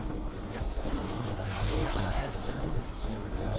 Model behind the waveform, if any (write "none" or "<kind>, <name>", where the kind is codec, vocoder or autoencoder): codec, SNAC